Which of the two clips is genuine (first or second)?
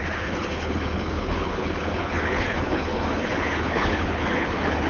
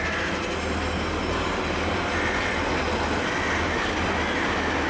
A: second